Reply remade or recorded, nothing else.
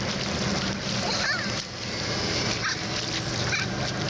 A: recorded